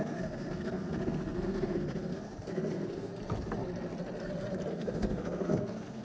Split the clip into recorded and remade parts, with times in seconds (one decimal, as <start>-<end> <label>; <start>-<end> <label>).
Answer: 0.0-3.1 remade; 3.1-4.7 recorded; 4.7-6.0 remade